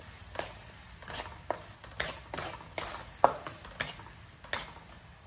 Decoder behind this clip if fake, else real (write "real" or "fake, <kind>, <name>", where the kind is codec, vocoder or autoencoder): real